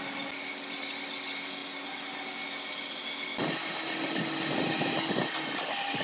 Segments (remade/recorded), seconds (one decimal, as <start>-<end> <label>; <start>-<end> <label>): 0.0-6.0 recorded

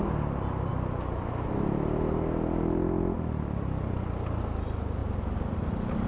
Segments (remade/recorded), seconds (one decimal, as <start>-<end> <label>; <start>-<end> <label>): 0.0-6.1 recorded

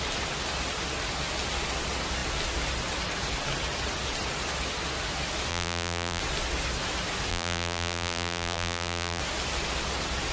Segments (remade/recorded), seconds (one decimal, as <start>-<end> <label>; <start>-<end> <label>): 0.0-5.5 recorded; 5.5-6.2 remade; 6.2-7.3 recorded; 7.3-9.2 remade; 9.2-10.3 recorded

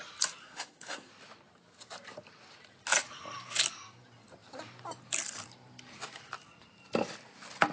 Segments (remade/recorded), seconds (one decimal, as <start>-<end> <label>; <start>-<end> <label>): 0.0-0.4 recorded; 0.4-1.1 remade; 1.1-7.7 recorded

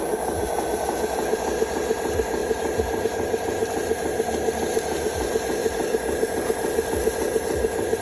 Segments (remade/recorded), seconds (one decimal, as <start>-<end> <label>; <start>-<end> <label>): 0.0-8.0 recorded

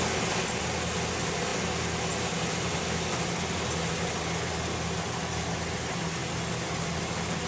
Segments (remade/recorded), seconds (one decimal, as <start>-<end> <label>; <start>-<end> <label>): 0.0-7.5 recorded

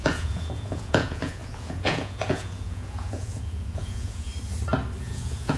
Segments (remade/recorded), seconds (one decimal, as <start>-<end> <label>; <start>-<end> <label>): 0.0-4.3 remade; 4.3-5.0 recorded; 5.0-5.6 remade

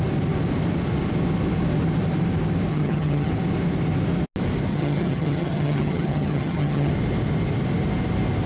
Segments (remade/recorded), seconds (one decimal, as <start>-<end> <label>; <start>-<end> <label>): 0.0-2.7 recorded; 2.7-3.3 remade; 3.3-4.7 recorded; 4.7-6.9 remade; 6.9-8.5 recorded